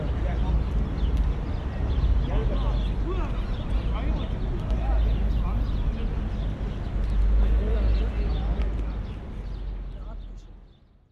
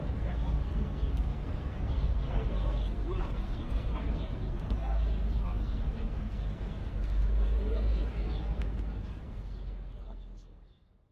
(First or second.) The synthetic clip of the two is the second